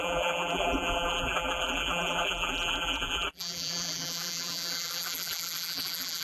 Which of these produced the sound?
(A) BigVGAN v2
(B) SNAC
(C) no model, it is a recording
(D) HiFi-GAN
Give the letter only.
A